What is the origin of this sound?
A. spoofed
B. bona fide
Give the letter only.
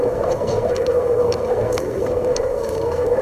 A